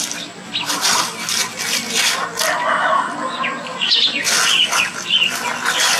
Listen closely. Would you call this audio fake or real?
real